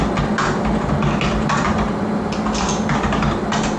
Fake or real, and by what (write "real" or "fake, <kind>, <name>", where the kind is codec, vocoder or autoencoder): real